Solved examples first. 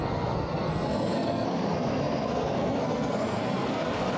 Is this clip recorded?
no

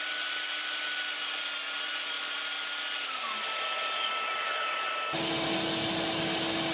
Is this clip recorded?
yes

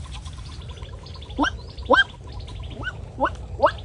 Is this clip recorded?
yes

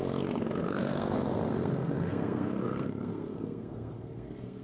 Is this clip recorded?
no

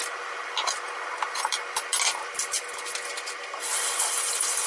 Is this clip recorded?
yes